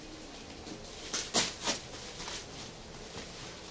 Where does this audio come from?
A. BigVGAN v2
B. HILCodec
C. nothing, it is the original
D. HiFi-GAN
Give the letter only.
C